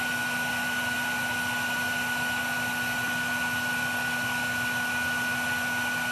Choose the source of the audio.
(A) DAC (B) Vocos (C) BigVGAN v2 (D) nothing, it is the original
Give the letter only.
D